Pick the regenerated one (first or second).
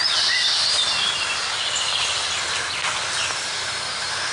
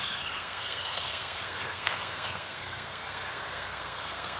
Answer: second